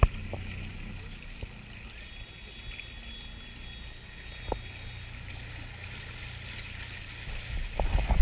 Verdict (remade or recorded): recorded